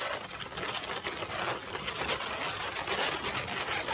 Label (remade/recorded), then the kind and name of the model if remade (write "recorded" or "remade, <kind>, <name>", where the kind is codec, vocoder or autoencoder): recorded